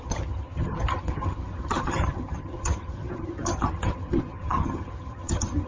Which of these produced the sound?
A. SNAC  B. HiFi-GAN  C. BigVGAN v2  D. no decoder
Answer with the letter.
B